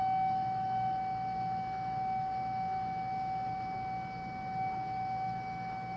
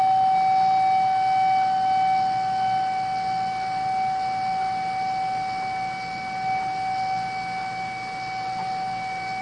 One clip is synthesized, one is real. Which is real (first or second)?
second